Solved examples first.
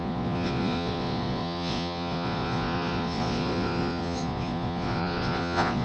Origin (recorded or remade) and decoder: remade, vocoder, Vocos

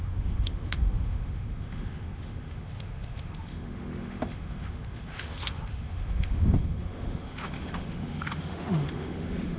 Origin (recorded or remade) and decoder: remade, autoencoder, DAC-VAE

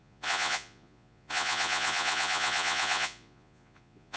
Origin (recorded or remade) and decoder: remade, vocoder, Vocos